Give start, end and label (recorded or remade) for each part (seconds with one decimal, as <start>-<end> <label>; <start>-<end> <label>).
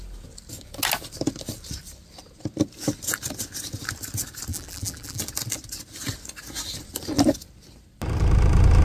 0.0-4.5 recorded; 4.5-5.2 remade; 5.2-8.8 recorded